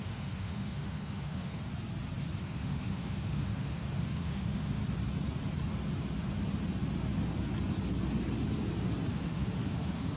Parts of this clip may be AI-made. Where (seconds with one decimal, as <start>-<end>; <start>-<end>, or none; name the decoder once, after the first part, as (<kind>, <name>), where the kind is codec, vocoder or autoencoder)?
0.0-1.6 (autoencoder, DAC-VAE); 2.4-4.8; 9.1-10.2